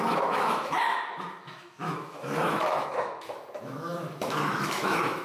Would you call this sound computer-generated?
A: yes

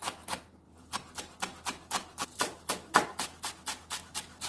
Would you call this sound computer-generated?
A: no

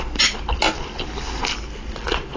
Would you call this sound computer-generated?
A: no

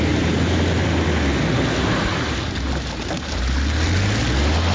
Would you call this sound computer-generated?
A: no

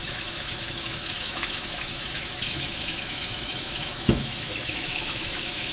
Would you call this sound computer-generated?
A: yes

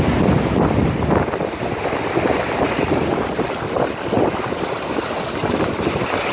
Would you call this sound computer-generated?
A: no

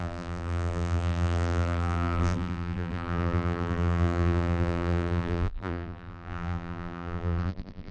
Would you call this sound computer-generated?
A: yes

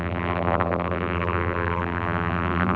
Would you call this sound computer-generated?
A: yes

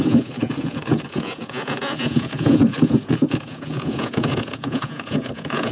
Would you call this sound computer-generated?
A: yes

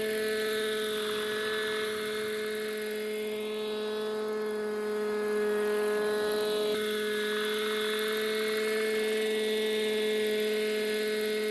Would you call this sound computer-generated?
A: no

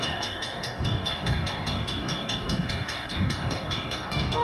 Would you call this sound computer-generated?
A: yes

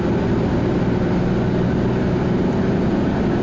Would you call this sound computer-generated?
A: no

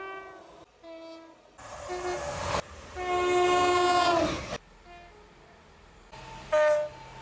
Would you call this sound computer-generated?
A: no